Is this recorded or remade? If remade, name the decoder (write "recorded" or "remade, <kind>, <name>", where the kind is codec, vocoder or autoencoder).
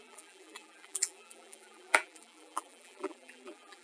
remade, vocoder, BigVGAN v2